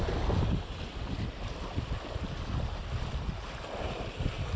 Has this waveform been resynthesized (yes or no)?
no